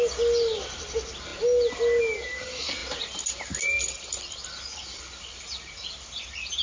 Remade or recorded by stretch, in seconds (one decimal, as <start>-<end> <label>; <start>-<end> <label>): 0.0-6.6 recorded